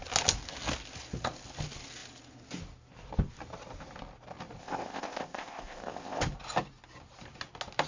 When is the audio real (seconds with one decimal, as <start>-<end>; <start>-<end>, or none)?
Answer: 0.0-4.6; 6.2-7.9